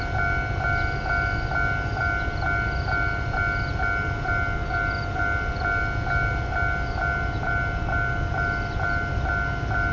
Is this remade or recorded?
recorded